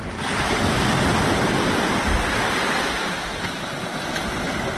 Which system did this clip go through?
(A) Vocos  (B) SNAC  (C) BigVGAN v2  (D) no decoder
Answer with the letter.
D